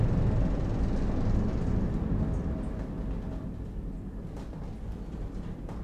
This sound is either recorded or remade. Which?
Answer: recorded